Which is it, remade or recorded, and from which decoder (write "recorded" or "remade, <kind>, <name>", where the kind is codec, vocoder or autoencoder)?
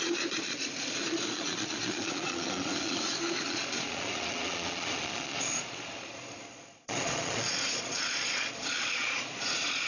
remade, vocoder, Vocos